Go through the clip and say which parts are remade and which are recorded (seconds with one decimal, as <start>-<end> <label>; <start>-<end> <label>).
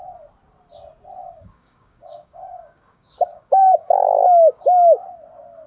0.0-1.2 recorded; 1.2-4.6 remade; 4.6-5.7 recorded